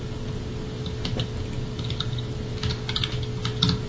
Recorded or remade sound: recorded